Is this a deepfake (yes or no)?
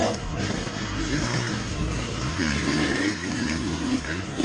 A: yes